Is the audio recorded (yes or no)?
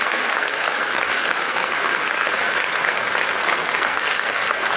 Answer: no